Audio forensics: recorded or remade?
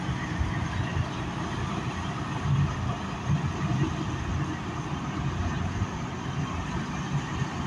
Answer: recorded